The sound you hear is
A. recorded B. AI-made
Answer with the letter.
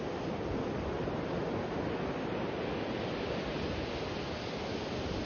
A